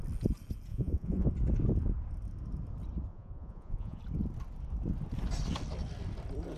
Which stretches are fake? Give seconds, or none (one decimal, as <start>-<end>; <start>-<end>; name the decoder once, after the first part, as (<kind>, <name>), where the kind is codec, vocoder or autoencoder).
0.7-1.3 (vocoder, Vocos); 3.1-4.0